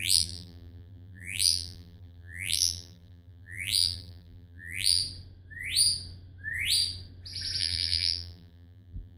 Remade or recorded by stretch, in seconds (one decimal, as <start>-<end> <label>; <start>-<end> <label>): 0.0-5.0 remade; 5.0-7.6 recorded; 7.6-9.2 remade